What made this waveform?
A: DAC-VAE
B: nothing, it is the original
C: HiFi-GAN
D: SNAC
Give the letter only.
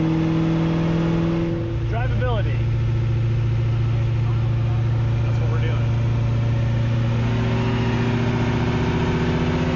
B